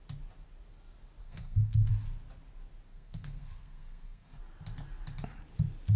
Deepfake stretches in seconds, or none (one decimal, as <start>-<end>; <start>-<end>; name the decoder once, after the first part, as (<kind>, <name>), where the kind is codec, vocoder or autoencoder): 1.2-1.9 (codec, SNAC); 2.9-4.4